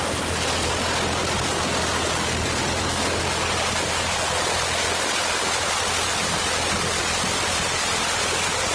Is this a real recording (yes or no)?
yes